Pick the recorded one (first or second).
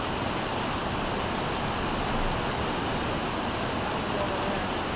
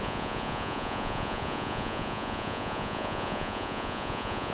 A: first